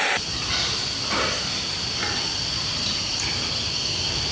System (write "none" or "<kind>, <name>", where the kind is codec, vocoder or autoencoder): none